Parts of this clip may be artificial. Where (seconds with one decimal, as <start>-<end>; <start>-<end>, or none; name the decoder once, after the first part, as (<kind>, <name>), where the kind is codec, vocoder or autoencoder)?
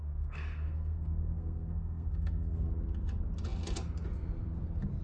0.0-2.7 (codec, SNAC)